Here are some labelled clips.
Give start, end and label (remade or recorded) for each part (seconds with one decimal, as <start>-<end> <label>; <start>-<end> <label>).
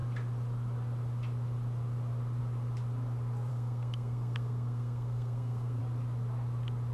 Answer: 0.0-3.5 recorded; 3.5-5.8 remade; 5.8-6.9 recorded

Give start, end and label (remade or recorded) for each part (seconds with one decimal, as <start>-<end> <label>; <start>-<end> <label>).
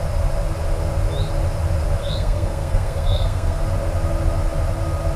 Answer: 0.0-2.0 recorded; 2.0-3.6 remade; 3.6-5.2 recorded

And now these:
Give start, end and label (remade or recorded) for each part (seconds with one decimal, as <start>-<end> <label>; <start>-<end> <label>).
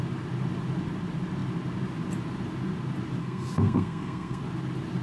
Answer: 0.0-3.2 recorded; 3.2-4.4 remade; 4.4-5.0 recorded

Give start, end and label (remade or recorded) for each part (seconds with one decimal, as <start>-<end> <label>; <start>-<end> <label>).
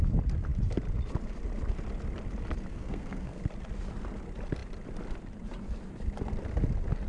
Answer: 0.0-2.7 recorded; 2.7-3.4 remade; 3.4-7.1 recorded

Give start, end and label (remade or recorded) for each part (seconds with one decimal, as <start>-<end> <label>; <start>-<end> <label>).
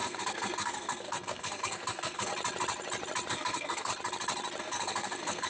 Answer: 0.0-2.3 remade; 2.3-3.3 recorded; 3.3-3.9 remade; 3.9-4.6 recorded; 4.6-5.5 remade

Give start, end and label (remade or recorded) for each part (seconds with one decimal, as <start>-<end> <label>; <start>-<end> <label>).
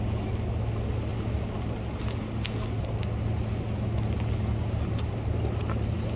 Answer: 0.0-6.2 recorded